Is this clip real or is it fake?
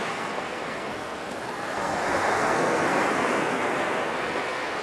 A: fake